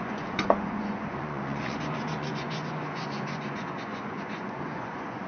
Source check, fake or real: fake